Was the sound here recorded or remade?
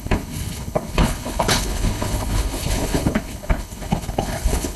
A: remade